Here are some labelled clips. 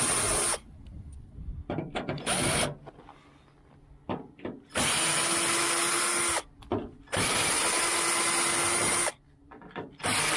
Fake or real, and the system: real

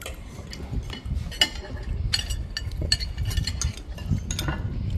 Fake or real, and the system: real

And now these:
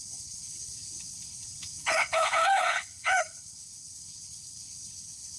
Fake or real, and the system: fake, codec, HILCodec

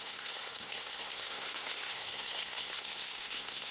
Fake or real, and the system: fake, codec, SNAC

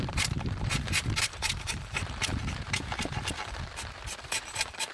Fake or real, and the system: fake, vocoder, BigVGAN v2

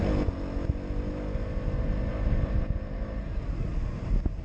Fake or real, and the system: real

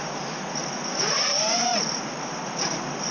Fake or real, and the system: real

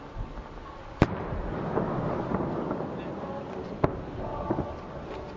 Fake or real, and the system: real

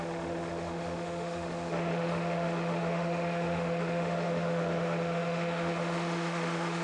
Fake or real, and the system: fake, autoencoder, DAC-VAE